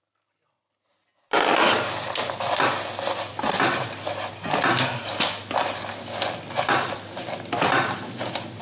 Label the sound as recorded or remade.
recorded